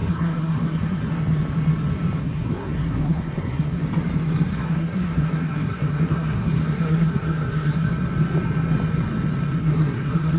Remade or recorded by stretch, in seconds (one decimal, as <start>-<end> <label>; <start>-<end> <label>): 0.0-1.1 remade; 1.1-2.2 recorded; 2.2-3.8 remade; 3.8-4.5 recorded; 4.5-7.9 remade; 7.9-9.6 recorded; 9.6-10.4 remade